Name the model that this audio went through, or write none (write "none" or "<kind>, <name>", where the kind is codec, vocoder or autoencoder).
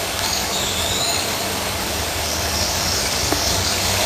codec, DAC